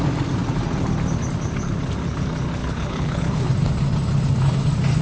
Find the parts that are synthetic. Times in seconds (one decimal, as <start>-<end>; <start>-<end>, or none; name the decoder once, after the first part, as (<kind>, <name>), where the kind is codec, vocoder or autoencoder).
2.6-3.5 (codec, HILCodec)